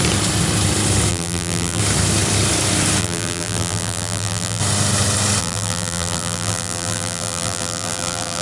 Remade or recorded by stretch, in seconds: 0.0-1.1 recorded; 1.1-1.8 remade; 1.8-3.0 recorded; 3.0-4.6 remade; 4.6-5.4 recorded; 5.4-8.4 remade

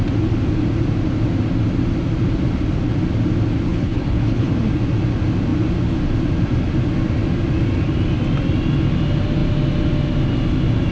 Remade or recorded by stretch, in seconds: 0.0-3.7 recorded; 3.7-4.5 remade; 4.5-10.9 recorded

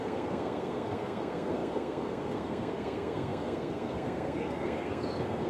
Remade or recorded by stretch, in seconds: 0.0-5.5 remade

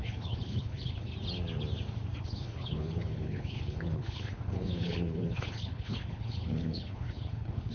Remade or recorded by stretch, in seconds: 0.0-1.1 remade; 1.1-2.2 recorded; 2.2-7.7 remade

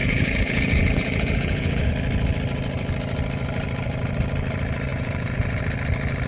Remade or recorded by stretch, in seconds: 0.0-1.9 remade; 1.9-4.9 recorded; 4.9-5.6 remade; 5.6-6.3 recorded

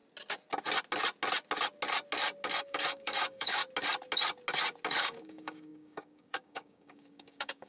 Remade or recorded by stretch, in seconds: 0.0-2.6 recorded; 2.6-3.6 remade; 3.6-5.0 recorded; 5.0-7.7 remade